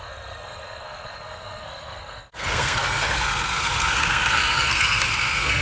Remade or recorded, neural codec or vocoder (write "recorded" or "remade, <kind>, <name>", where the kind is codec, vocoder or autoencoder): remade, codec, SNAC